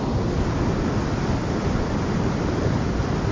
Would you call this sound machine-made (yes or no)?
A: no